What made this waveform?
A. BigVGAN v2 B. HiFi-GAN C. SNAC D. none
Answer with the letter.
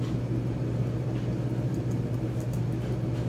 D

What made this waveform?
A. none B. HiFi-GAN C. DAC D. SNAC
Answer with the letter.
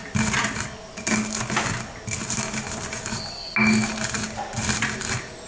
A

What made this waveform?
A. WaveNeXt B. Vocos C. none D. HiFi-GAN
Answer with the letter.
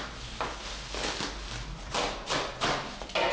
C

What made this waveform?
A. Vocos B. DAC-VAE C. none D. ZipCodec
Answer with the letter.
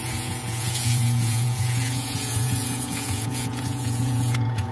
A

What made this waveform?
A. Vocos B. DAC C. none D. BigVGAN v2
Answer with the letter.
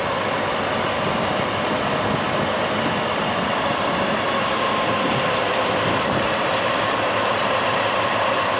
C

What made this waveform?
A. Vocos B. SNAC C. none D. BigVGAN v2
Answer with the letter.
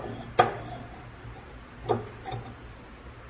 C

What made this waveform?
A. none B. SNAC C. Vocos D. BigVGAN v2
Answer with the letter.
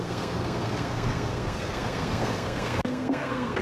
B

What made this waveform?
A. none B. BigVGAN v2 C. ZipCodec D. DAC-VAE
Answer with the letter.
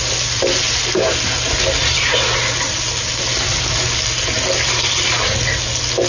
A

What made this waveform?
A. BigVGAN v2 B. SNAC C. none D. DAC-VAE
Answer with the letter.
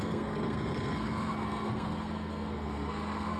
B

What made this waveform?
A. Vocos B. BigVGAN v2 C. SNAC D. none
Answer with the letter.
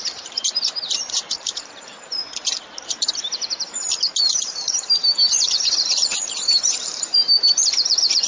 B